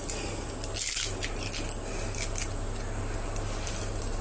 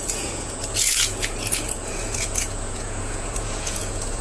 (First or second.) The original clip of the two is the first